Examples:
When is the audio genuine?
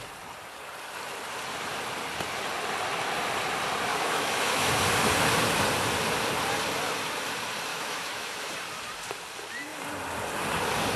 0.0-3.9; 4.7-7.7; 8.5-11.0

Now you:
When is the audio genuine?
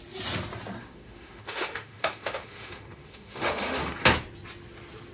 0.0-0.8; 3.9-5.1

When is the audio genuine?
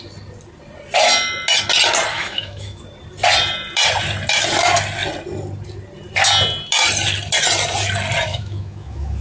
0.0-2.1; 2.8-8.3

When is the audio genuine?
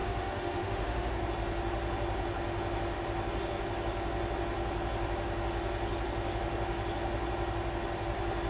1.1-8.5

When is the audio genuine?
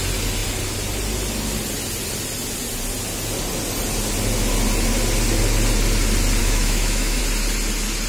0.0-6.4; 7.2-8.1